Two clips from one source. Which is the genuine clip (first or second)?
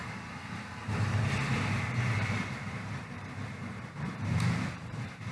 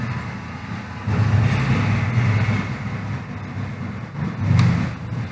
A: second